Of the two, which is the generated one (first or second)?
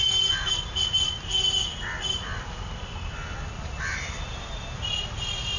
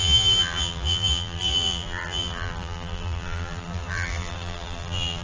second